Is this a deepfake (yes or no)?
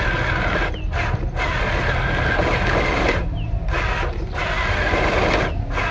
no